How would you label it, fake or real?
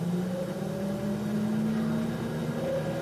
real